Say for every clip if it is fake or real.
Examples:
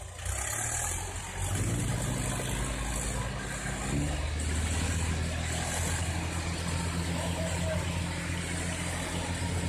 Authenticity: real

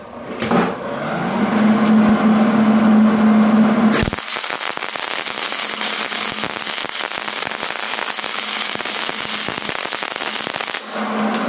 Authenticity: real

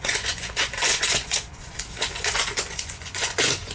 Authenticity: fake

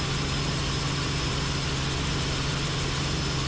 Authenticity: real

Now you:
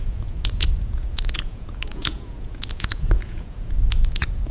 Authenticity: fake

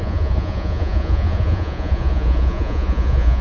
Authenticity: fake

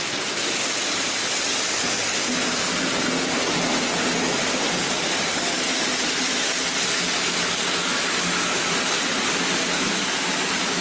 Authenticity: real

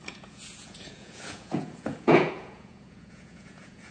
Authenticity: fake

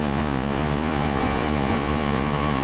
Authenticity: fake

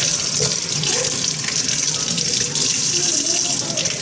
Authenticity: real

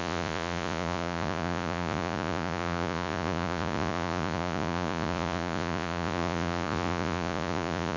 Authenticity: fake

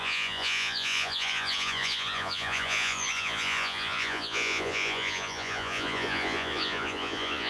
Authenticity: fake